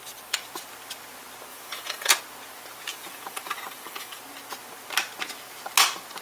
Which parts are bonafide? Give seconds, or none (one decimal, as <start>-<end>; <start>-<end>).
0.0-1.5; 2.2-2.9; 4.2-6.2